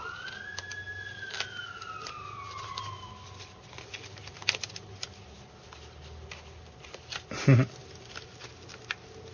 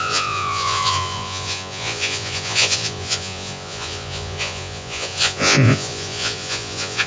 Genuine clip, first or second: first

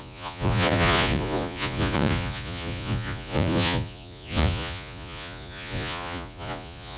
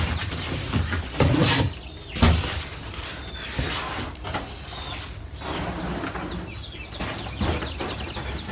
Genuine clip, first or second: second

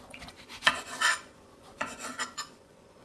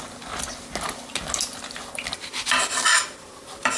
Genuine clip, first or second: second